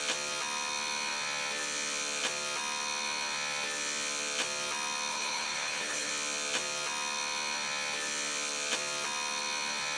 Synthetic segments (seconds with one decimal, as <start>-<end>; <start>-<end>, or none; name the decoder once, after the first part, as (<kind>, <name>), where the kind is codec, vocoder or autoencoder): 5.1-6.1 (codec, HILCodec)